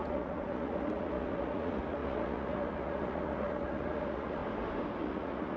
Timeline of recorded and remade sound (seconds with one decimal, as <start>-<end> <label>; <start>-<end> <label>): 0.0-4.4 remade; 4.4-5.0 recorded; 5.0-5.6 remade